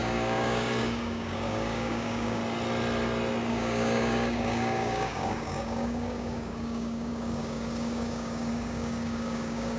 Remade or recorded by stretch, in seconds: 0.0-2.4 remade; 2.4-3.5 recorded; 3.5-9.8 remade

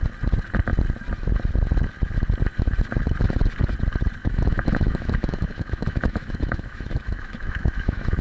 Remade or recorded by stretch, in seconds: 0.0-4.2 recorded; 4.2-8.2 remade